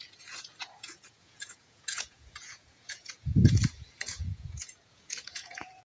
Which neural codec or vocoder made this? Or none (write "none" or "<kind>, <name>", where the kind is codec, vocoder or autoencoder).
vocoder, Vocos